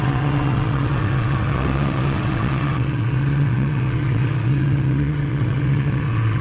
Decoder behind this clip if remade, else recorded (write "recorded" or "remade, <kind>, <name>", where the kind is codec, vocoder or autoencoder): remade, vocoder, WaveNeXt